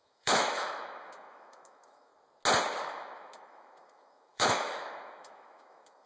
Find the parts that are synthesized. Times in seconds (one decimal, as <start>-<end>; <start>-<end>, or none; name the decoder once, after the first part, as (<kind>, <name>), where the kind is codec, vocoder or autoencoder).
0.0-2.1 (autoencoder, DAC-VAE); 2.9-6.1